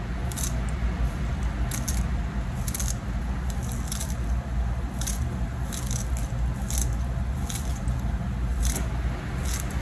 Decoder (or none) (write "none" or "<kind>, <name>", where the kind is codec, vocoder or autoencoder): none